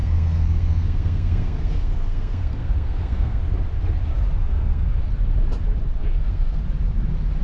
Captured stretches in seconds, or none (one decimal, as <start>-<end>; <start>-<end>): 3.4-4.4; 5.0-6.0; 6.6-7.4